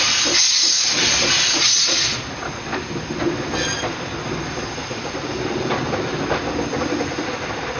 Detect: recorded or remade recorded